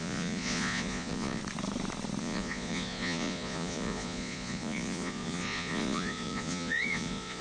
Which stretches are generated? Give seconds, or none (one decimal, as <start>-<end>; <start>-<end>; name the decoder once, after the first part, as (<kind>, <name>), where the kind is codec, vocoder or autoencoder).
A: 0.0-1.4 (vocoder, Vocos); 2.2-7.4